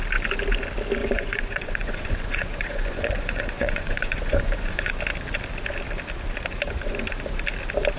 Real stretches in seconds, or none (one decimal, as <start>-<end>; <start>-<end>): 0.0-1.0; 4.9-8.0